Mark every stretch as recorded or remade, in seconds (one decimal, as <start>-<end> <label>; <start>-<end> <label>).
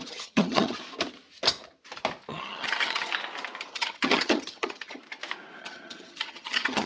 0.0-0.8 remade; 0.8-2.3 recorded; 2.3-3.1 remade; 3.1-3.6 recorded; 3.6-5.0 remade; 5.0-5.6 recorded; 5.6-6.9 remade